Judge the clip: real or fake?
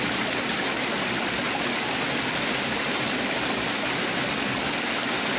real